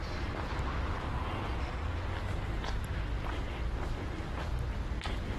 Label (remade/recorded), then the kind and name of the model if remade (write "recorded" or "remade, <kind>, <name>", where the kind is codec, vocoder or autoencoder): recorded